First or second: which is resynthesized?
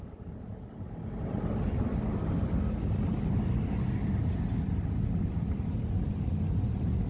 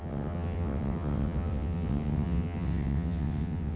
second